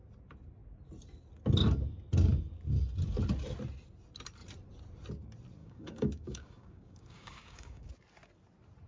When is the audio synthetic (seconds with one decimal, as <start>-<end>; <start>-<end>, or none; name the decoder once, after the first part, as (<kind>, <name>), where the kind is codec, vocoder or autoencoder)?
5.6-7.9 (codec, DAC)